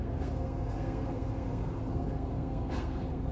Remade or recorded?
remade